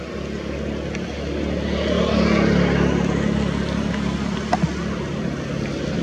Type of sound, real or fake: real